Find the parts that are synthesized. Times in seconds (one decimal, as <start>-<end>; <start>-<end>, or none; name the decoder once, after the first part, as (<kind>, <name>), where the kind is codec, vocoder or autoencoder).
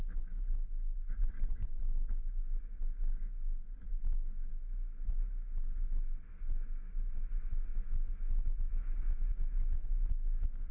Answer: 1.2-1.8 (vocoder, Vocos)